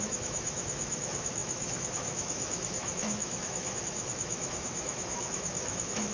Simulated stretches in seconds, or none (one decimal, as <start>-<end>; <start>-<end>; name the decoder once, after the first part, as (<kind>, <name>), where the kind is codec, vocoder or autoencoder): 0.0-6.1 (autoencoder, DAC-VAE)